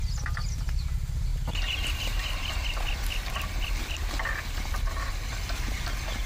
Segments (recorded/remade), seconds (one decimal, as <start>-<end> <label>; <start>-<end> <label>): 0.0-6.3 recorded